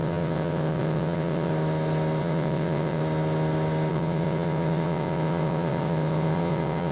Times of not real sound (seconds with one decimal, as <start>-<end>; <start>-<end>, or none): 0.0-1.5; 2.2-3.0; 3.9-6.9